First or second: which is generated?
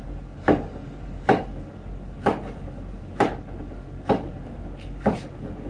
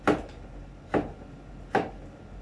first